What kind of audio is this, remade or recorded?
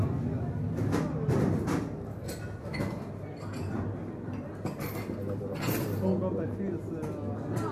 recorded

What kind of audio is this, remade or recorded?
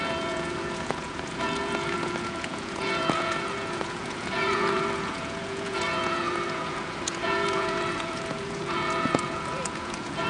remade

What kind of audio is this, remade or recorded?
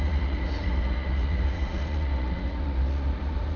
remade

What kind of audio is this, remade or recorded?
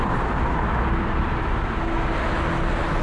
recorded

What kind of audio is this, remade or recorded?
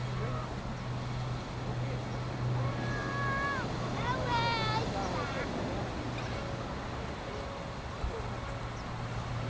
recorded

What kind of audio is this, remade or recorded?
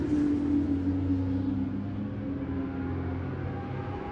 recorded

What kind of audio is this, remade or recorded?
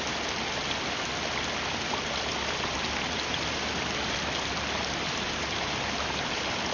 recorded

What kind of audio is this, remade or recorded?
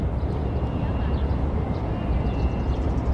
recorded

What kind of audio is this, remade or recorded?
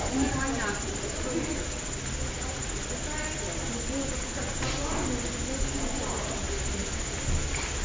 recorded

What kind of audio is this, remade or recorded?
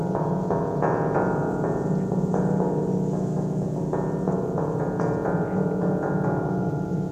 remade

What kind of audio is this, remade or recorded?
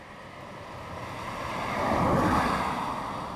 recorded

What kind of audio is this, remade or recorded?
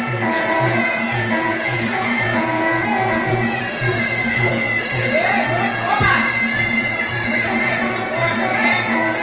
remade